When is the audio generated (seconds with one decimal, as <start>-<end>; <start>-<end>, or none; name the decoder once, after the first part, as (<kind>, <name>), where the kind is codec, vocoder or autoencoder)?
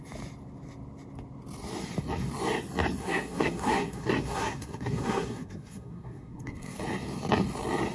3.0-6.8 (codec, SNAC)